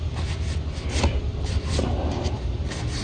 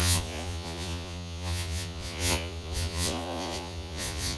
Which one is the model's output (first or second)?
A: second